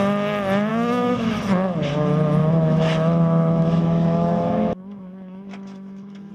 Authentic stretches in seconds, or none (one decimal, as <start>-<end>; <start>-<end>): 0.0-0.7; 1.3-2.4